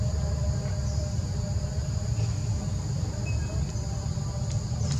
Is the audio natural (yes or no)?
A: yes